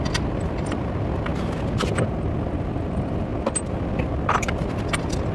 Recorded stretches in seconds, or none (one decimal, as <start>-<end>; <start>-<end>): 1.3-2.7; 3.3-3.8